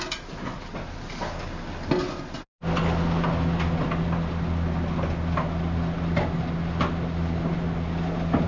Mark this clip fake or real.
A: real